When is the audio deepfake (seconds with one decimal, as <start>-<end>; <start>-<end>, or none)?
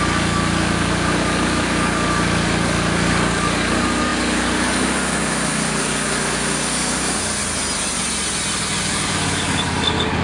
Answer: 0.0-7.4; 8.8-10.2